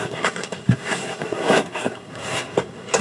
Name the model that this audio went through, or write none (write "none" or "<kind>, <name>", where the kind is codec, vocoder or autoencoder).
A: codec, SNAC